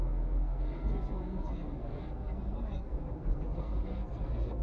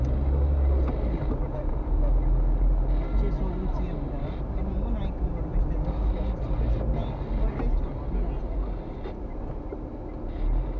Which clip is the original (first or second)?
second